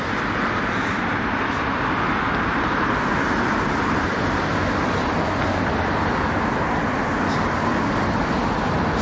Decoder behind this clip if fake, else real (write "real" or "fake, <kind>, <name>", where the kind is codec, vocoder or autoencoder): real